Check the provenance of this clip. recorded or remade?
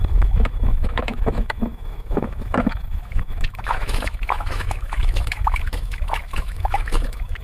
remade